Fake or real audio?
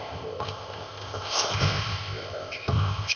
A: fake